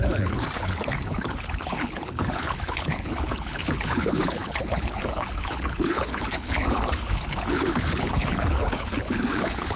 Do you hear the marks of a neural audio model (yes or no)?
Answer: yes